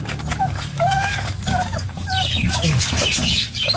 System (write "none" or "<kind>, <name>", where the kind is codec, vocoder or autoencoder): codec, DAC